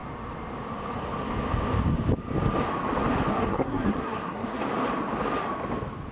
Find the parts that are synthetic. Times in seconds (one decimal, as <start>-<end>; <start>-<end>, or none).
3.3-4.6